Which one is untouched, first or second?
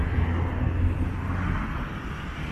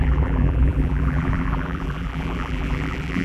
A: first